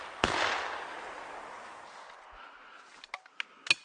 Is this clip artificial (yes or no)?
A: no